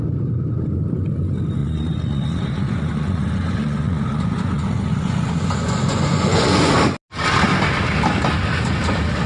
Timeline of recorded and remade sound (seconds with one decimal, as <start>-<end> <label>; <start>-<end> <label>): 0.0-1.6 recorded; 1.6-6.7 remade; 6.7-9.3 recorded